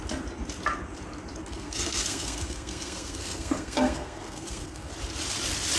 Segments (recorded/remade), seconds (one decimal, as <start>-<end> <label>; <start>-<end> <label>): 0.0-1.4 recorded; 1.4-4.9 remade; 4.9-5.8 recorded